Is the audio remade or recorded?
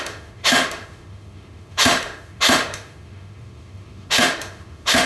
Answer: remade